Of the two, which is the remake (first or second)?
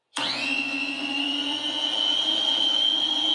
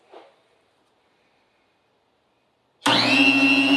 first